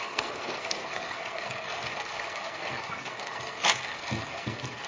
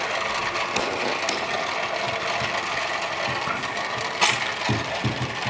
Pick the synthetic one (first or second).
first